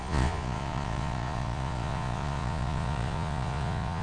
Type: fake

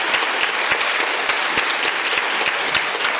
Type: real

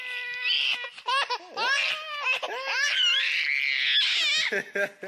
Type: real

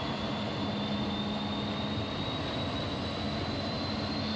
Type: real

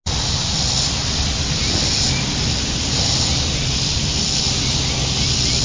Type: real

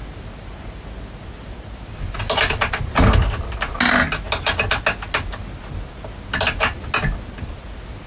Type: real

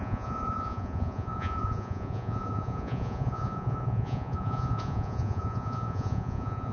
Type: fake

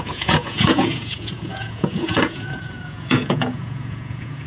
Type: fake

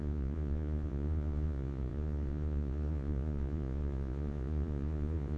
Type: fake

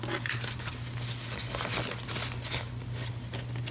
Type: real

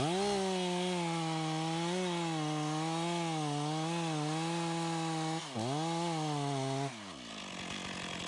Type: real